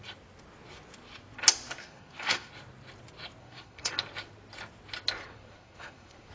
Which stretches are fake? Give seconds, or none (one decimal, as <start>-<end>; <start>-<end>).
1.8-2.5; 3.4-3.9; 5.2-6.3